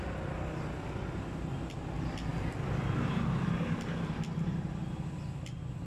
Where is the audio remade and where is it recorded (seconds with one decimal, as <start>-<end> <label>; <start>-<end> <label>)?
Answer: 0.0-5.9 recorded